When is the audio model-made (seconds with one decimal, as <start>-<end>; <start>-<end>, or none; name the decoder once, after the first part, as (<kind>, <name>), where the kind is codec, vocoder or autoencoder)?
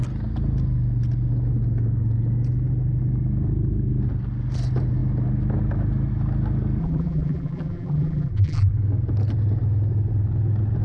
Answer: 6.8-8.7 (vocoder, BigVGAN v2)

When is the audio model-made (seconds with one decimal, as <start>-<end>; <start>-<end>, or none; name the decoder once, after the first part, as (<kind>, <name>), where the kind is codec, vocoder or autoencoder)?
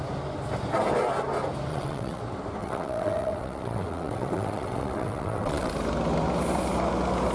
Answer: 1.7-2.2 (vocoder, WaveNeXt); 2.6-5.7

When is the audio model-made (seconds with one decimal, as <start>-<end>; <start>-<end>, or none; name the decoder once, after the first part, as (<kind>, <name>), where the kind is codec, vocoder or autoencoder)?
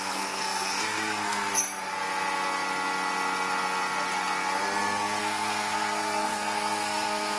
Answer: 0.0-1.9 (codec, SNAC); 5.2-7.4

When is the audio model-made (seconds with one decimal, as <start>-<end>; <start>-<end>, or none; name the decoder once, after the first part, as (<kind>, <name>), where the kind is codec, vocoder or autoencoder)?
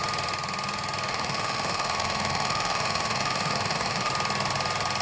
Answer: 1.1-4.1 (autoencoder, DAC-VAE)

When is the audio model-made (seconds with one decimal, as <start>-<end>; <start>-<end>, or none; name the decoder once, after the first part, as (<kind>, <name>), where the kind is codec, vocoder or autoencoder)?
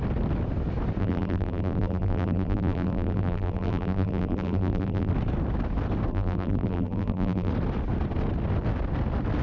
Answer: 1.0-5.1 (vocoder, BigVGAN v2); 6.1-7.5